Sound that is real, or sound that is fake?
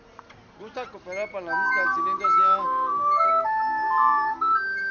real